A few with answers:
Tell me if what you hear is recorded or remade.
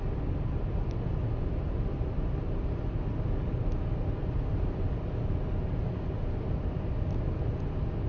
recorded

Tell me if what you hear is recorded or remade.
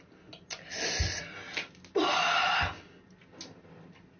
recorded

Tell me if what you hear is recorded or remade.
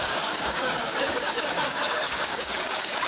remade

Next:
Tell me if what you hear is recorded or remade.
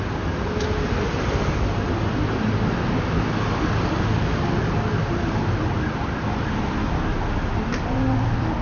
recorded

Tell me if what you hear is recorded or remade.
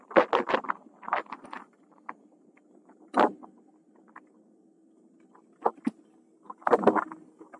recorded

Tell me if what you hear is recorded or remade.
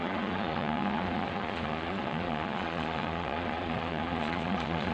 remade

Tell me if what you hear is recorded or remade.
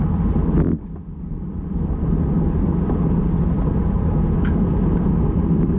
recorded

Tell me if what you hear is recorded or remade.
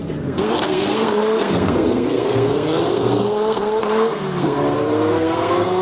remade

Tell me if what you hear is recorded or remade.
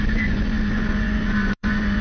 remade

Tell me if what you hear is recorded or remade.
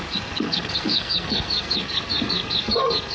remade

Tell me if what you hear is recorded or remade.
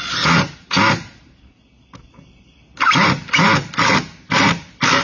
recorded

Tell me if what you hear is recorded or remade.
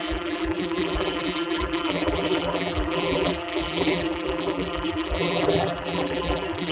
remade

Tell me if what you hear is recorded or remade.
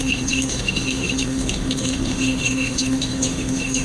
remade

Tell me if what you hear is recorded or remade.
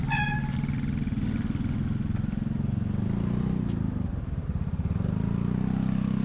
recorded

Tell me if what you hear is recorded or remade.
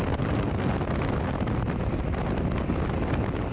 recorded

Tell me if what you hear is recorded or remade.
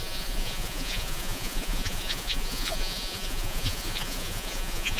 remade